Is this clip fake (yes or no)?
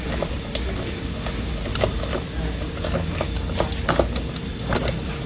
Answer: no